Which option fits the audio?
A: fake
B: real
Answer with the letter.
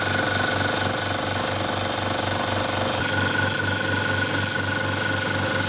B